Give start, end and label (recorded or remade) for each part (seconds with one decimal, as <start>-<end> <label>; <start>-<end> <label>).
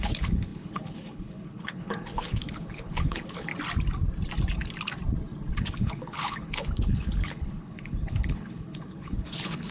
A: 0.0-3.5 remade; 3.5-5.5 recorded; 5.5-9.7 remade